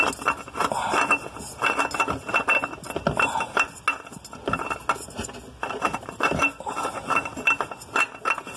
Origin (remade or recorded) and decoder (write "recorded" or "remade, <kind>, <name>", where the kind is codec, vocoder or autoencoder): recorded